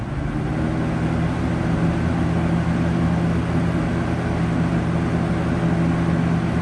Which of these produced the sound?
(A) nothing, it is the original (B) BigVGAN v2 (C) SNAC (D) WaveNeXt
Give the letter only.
A